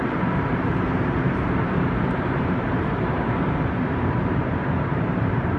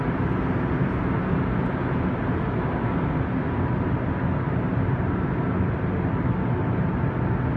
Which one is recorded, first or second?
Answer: second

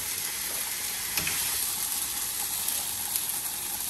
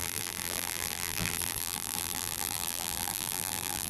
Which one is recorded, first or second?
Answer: first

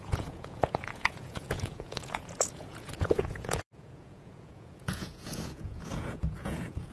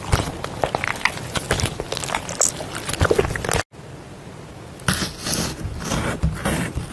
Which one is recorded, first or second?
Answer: second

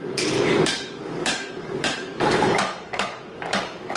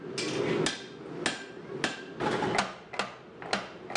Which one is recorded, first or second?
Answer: second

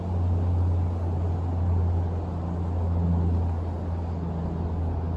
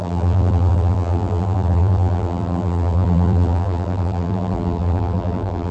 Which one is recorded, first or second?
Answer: first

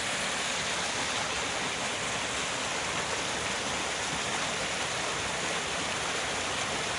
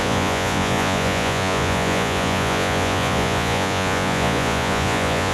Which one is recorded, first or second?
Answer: first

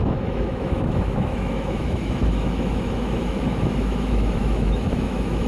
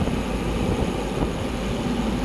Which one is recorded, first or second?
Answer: second